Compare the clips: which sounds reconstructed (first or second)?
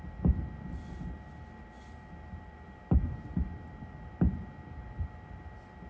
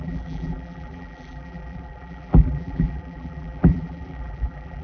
second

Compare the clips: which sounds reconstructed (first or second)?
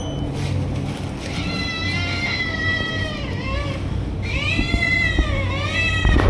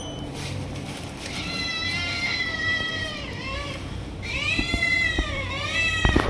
second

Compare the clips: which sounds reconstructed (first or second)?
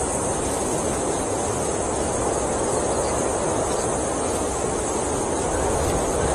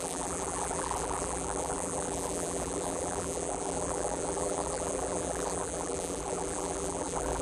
second